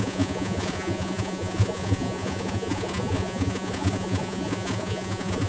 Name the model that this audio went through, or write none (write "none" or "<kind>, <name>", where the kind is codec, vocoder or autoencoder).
vocoder, Vocos